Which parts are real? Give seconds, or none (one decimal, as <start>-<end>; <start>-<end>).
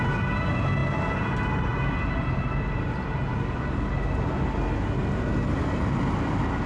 0.0-6.7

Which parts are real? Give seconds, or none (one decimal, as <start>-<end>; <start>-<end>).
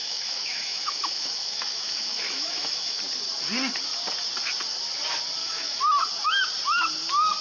3.0-5.4; 6.0-7.4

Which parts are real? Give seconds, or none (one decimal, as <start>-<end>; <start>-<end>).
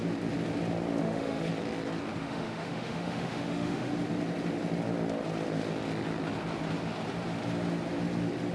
0.0-1.0; 1.5-2.2; 3.9-8.5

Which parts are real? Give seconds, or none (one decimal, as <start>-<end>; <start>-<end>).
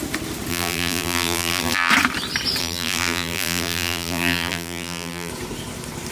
0.0-0.5; 1.9-2.6; 5.3-6.1